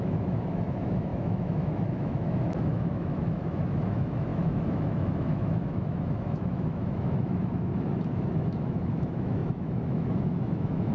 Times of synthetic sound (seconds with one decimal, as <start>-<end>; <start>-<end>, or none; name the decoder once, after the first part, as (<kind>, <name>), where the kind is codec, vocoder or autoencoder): 0.0-10.9 (autoencoder, DAC-VAE)